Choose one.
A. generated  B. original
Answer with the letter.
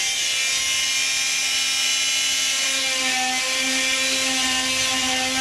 B